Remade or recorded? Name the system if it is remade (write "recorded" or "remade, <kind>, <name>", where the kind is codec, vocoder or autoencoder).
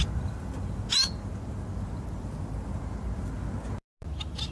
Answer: recorded